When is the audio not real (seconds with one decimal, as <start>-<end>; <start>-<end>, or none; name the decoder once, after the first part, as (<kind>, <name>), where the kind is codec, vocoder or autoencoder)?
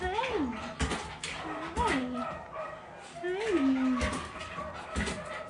none